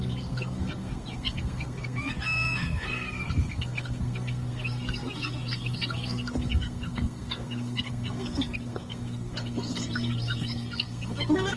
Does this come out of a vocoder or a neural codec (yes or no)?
yes